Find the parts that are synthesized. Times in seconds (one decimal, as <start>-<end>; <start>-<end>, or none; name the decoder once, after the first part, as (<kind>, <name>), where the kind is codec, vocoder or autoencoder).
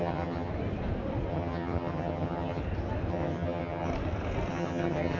0.0-0.5 (vocoder, HiFi-GAN); 1.3-2.6; 3.1-3.9; 4.5-5.2